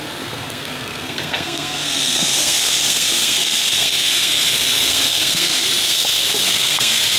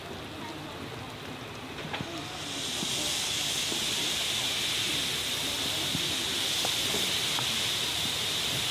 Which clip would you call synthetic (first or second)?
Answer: first